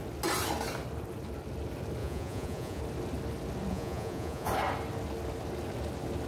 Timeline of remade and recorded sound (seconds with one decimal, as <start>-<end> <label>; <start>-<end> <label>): 0.0-2.0 recorded; 2.0-2.8 remade; 2.8-3.7 recorded; 3.7-4.5 remade; 4.5-6.3 recorded